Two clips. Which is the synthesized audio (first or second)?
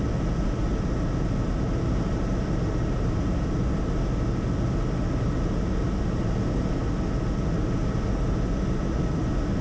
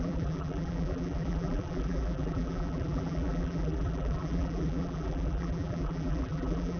second